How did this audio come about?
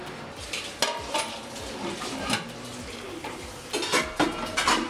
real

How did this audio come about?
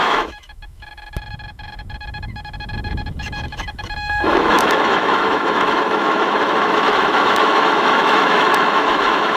fake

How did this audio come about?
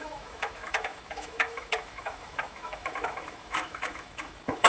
fake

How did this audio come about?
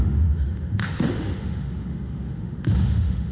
fake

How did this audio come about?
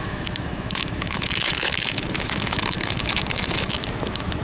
fake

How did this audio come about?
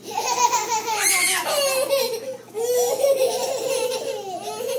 real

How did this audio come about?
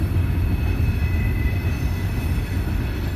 real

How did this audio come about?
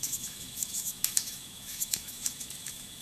fake